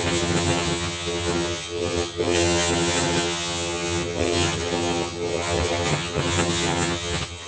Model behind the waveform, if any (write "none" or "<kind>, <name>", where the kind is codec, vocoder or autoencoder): vocoder, HiFi-GAN